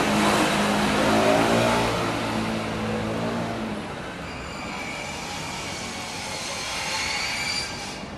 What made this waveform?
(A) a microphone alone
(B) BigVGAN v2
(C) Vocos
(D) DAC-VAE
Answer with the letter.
A